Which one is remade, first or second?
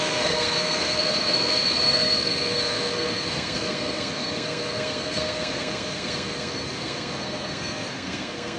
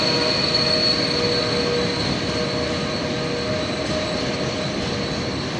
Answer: first